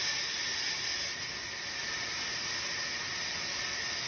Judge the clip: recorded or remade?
recorded